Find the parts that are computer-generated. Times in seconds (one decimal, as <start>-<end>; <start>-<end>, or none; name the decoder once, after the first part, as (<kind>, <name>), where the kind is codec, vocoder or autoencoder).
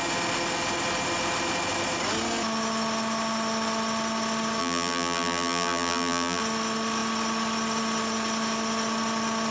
4.6-6.4 (vocoder, BigVGAN v2)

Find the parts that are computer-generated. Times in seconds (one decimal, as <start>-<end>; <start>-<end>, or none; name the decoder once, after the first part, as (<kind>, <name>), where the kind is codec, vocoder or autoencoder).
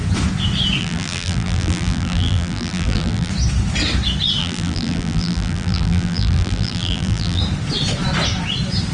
0.8-3.3 (vocoder, BigVGAN v2); 4.4-7.4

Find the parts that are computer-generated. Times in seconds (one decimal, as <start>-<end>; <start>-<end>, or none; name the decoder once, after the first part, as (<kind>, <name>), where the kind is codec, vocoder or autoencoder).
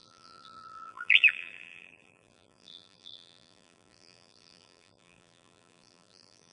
0.0-6.5 (vocoder, BigVGAN v2)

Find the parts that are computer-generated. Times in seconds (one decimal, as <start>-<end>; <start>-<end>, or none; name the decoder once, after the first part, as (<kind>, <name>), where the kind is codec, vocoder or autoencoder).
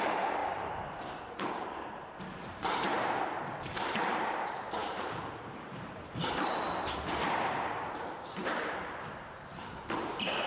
0.0-10.5 (vocoder, BigVGAN v2)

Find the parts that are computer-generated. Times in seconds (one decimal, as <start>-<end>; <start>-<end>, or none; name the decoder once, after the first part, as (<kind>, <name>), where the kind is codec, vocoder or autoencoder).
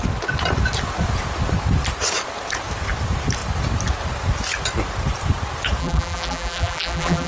5.8-7.3 (vocoder, BigVGAN v2)